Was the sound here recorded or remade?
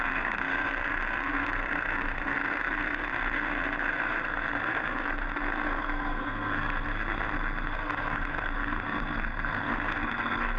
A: remade